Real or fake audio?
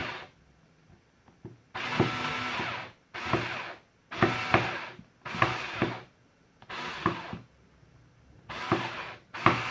real